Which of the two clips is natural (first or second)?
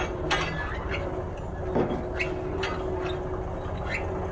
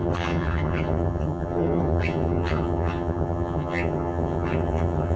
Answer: first